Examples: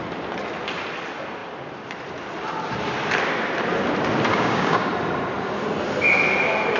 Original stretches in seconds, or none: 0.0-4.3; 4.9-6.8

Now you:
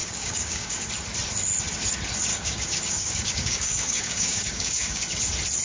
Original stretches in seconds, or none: 0.9-2.3; 5.0-5.6

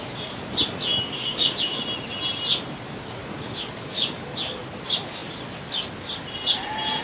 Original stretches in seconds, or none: 0.0-0.9; 1.8-3.2; 4.6-7.0

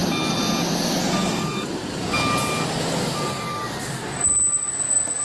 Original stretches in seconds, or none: 0.0-5.2

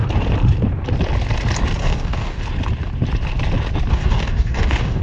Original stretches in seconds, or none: 0.0-1.8; 2.4-3.9

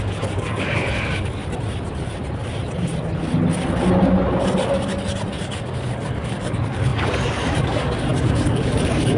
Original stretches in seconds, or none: 1.4-5.4

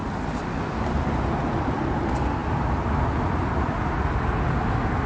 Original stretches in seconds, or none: 0.0-5.1

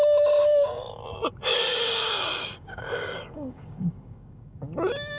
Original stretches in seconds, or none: 0.0-0.4; 1.0-1.5; 4.6-5.2